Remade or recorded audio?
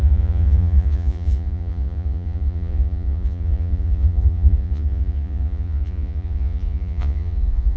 remade